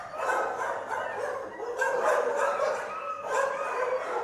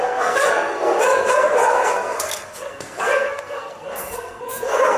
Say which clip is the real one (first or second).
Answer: first